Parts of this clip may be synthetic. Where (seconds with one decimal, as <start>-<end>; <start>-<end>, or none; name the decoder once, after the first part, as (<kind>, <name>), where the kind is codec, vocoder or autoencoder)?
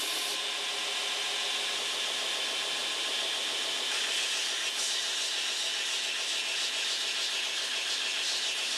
none